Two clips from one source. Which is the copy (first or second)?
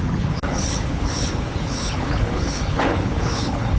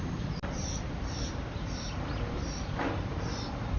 first